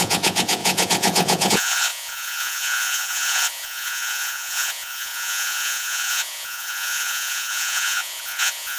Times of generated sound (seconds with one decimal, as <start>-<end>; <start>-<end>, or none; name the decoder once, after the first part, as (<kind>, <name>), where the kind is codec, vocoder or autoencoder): 0.0-8.8 (vocoder, Vocos)